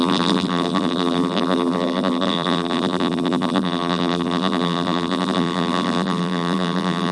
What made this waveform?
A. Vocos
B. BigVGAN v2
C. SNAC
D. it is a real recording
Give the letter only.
B